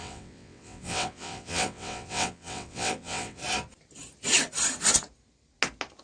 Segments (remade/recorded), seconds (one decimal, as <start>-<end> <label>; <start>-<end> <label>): 0.0-3.4 remade; 3.4-6.0 recorded